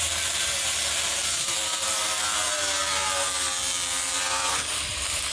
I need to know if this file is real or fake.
fake